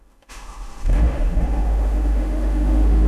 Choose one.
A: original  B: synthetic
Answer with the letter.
B